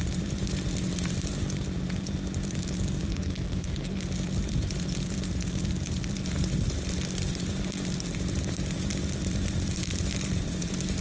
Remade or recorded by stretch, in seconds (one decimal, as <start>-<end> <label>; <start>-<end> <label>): 0.0-3.1 recorded; 3.1-4.0 remade; 4.0-11.0 recorded